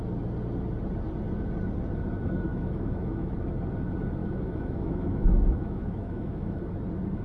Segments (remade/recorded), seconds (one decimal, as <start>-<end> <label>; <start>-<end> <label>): 0.0-2.5 recorded; 2.5-3.3 remade; 3.3-4.2 recorded; 4.2-6.6 remade; 6.6-7.2 recorded

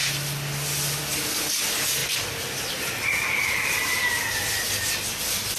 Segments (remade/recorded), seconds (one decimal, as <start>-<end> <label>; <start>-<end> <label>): 0.0-5.6 recorded

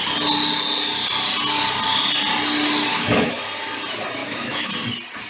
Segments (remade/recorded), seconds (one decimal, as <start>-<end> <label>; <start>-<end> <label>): 0.0-2.9 recorded; 2.9-3.4 remade; 3.4-4.2 recorded; 4.2-4.7 remade; 4.7-5.3 recorded

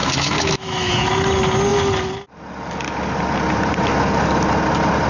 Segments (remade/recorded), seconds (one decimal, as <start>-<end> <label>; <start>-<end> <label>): 0.0-0.9 remade; 0.9-5.1 recorded

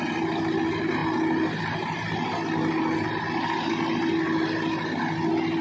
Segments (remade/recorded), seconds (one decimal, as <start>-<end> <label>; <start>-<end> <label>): 0.0-5.6 recorded